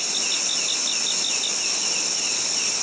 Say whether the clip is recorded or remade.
recorded